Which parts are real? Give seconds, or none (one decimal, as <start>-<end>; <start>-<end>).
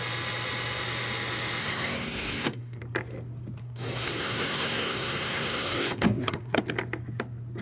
0.0-1.6; 2.8-3.6; 6.6-7.6